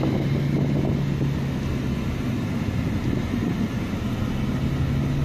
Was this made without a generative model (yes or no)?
yes